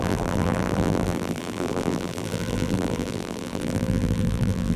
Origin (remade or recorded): remade